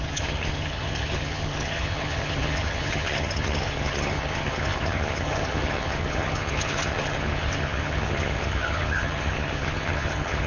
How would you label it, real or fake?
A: fake